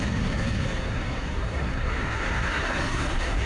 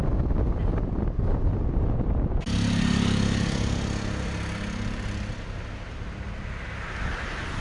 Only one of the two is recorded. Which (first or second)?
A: second